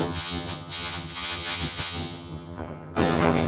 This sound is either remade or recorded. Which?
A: remade